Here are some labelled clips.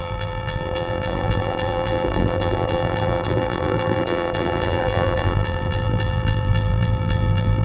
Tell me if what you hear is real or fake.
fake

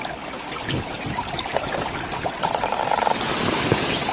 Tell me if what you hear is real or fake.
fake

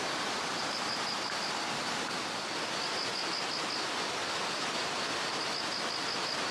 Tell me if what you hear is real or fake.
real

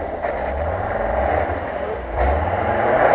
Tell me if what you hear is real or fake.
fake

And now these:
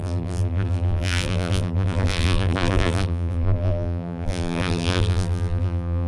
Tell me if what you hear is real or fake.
fake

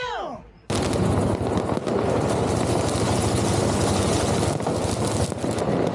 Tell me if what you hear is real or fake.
real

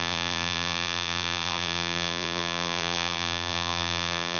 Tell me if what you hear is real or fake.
fake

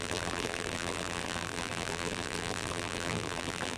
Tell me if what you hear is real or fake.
fake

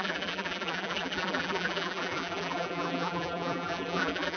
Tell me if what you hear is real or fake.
fake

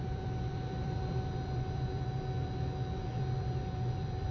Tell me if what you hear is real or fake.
fake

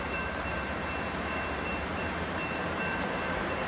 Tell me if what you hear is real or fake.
fake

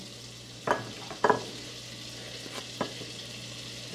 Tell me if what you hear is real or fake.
real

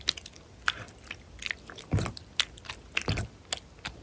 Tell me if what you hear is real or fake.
real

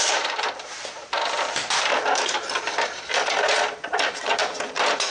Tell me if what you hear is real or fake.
fake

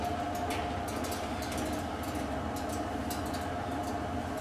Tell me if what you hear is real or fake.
real